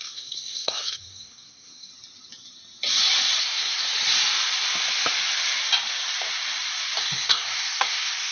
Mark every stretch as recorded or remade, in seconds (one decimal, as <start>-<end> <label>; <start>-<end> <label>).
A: 0.0-1.9 remade; 1.9-3.4 recorded; 3.4-3.8 remade; 3.8-7.0 recorded; 7.0-8.3 remade

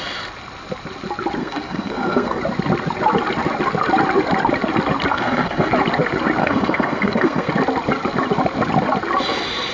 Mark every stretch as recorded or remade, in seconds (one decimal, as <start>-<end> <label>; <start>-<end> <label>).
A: 0.0-1.4 recorded; 1.4-2.4 remade; 2.4-5.1 recorded; 5.1-5.7 remade; 5.7-6.4 recorded; 6.4-7.5 remade; 7.5-9.7 recorded

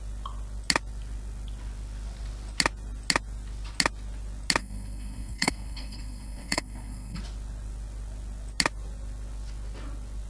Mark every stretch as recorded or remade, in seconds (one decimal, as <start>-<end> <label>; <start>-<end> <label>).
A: 0.0-4.6 recorded; 4.6-7.2 remade; 7.2-10.3 recorded

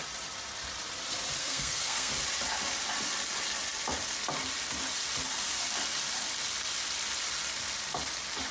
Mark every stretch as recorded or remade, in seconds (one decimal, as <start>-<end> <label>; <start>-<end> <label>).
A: 0.0-1.4 recorded; 1.4-2.1 remade; 2.1-8.5 recorded